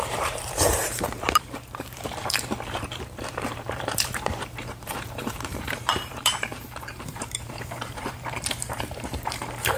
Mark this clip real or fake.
fake